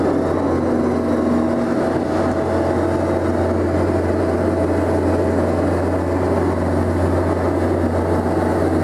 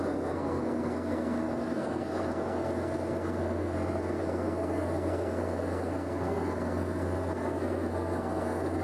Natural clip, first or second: first